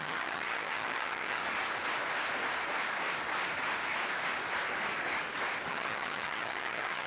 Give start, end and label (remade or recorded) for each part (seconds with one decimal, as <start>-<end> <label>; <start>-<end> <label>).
0.0-1.4 remade; 1.4-5.7 recorded; 5.7-7.1 remade